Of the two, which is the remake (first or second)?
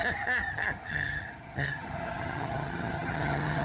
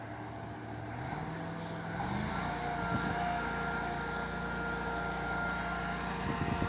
first